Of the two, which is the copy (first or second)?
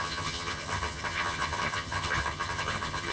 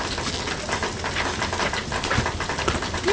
first